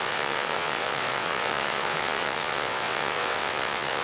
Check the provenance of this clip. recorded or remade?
remade